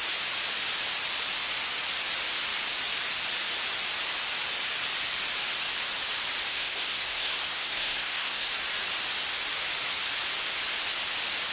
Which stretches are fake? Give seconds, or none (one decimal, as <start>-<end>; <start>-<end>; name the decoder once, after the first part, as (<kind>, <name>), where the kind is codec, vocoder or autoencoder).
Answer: 6.5-8.5 (codec, SNAC)